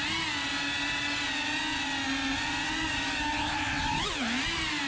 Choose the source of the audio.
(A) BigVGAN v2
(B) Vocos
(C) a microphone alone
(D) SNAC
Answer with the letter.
C